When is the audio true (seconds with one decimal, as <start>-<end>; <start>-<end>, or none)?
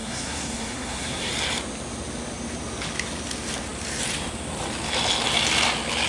1.3-6.1